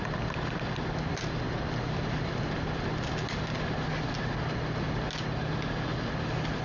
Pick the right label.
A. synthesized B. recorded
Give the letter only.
B